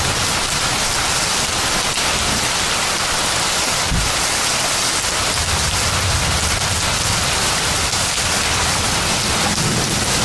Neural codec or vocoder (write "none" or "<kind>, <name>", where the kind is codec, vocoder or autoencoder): none